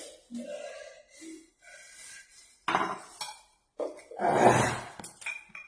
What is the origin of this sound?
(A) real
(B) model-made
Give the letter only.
A